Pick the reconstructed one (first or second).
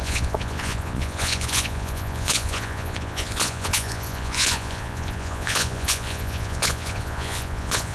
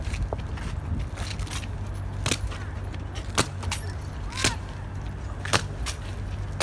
first